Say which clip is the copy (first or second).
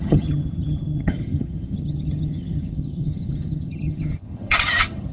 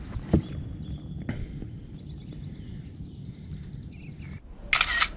first